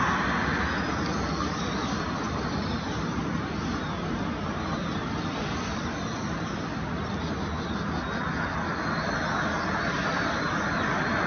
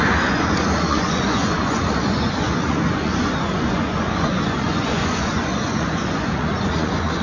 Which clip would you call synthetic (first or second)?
second